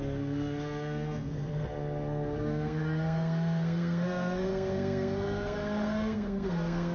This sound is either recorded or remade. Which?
remade